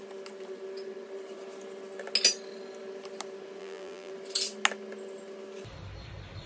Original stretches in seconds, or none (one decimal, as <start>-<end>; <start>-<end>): 0.0-3.6; 4.1-6.5

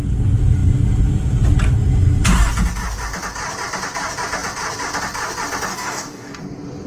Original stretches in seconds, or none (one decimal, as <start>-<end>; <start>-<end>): 0.0-5.7; 6.4-6.9

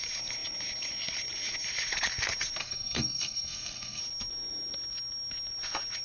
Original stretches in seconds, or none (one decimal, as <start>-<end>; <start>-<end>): 0.0-2.6; 4.0-6.0

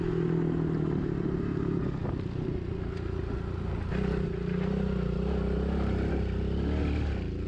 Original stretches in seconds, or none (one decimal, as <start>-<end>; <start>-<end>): 0.0-7.5

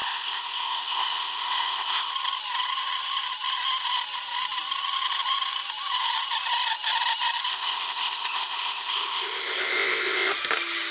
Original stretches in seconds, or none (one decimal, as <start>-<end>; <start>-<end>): 2.1-7.5; 10.3-10.9

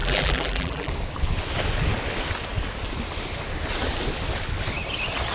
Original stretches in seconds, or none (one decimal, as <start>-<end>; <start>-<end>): 0.9-5.3